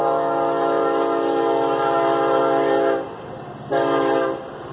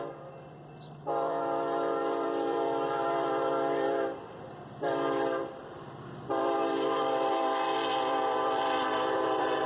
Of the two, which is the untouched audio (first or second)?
first